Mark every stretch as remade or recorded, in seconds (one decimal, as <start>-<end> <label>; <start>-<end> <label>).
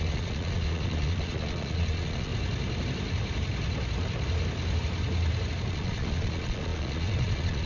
0.0-2.3 remade; 2.3-5.7 recorded; 5.7-7.7 remade